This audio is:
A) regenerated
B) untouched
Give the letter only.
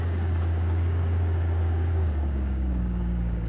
A